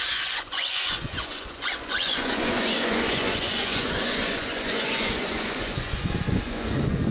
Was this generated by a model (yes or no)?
yes